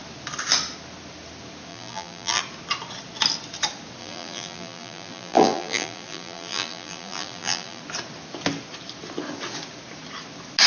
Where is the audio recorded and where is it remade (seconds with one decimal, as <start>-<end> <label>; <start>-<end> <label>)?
0.0-1.7 recorded; 1.7-2.4 remade; 2.4-4.0 recorded; 4.0-7.8 remade; 7.8-10.7 recorded